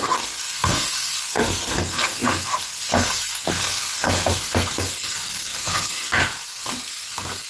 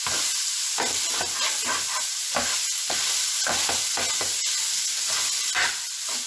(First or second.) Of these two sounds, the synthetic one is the first